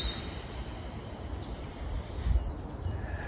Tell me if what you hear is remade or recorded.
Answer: recorded